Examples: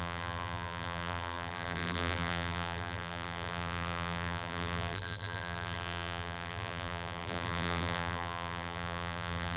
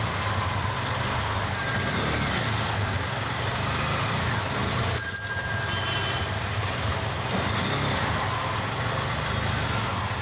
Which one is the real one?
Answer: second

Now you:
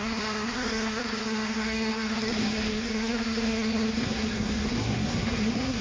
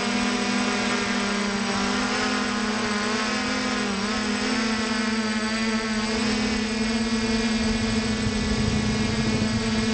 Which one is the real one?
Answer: second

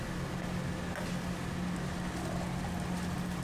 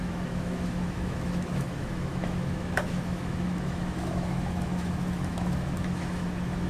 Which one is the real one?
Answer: first